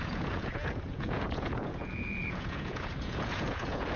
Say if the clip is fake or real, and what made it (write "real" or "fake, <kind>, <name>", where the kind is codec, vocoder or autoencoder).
fake, vocoder, Vocos